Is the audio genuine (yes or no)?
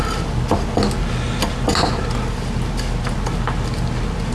yes